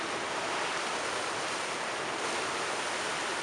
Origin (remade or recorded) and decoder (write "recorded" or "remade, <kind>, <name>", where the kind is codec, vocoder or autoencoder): recorded